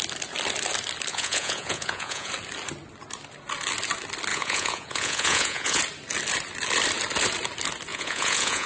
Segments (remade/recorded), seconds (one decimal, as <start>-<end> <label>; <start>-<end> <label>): 0.0-1.1 recorded; 1.1-2.3 remade; 2.3-4.3 recorded; 4.3-5.8 remade; 5.8-7.9 recorded; 7.9-8.7 remade

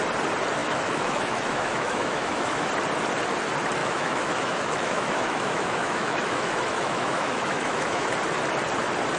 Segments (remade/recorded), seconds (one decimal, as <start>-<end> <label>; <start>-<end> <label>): 0.0-0.6 recorded; 0.6-2.7 remade; 2.7-3.8 recorded; 3.8-8.1 remade; 8.1-9.2 recorded

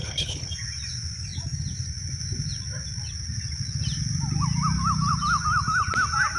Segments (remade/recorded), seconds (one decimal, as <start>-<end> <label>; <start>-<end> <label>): 0.0-0.5 remade; 0.5-6.4 recorded

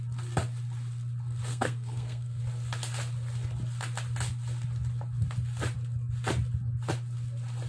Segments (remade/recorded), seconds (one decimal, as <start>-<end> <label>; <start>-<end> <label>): 0.0-1.5 recorded; 1.5-2.4 remade; 2.4-7.7 recorded

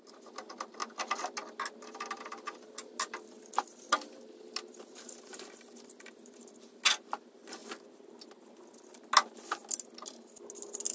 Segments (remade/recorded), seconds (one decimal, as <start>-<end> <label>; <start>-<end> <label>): 0.0-10.9 recorded

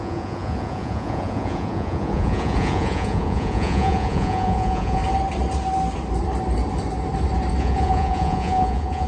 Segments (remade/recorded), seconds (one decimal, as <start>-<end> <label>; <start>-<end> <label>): 0.0-5.0 remade; 5.0-7.6 recorded; 7.6-9.1 remade

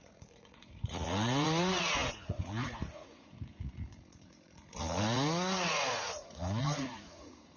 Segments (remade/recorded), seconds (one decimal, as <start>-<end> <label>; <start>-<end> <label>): 0.0-7.6 remade